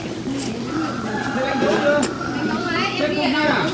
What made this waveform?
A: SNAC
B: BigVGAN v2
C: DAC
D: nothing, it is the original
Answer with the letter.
D